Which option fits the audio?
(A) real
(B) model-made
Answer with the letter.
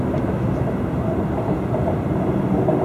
A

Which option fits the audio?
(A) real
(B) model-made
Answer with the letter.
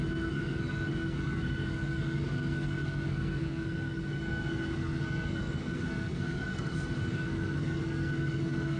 B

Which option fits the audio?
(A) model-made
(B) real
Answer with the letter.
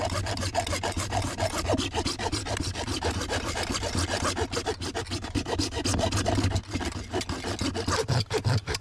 B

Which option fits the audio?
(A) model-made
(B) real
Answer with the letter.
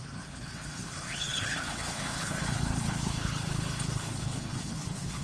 A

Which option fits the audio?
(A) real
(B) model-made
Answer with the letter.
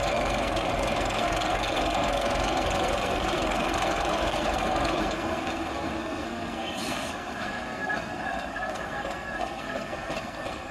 B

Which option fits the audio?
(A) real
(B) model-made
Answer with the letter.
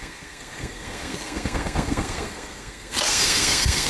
B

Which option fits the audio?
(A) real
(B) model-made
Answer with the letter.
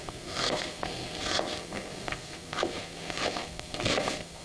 B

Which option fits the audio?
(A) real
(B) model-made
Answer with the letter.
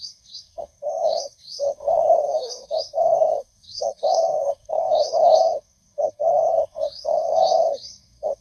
B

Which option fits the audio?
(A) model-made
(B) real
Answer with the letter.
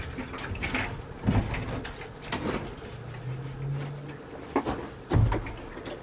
B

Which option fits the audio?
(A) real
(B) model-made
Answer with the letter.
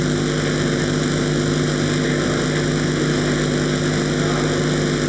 A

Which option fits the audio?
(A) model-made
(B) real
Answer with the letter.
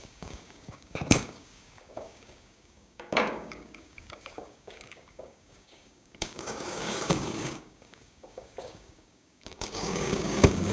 A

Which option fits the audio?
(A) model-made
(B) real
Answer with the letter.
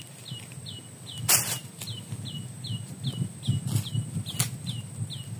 B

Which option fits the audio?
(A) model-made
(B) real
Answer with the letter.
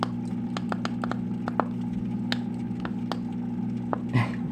B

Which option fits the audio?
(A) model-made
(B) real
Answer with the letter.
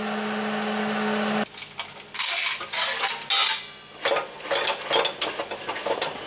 B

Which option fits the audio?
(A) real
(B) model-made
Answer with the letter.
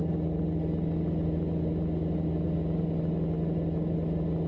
A